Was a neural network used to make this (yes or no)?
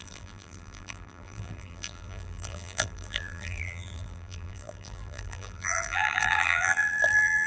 yes